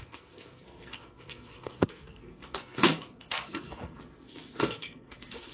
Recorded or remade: remade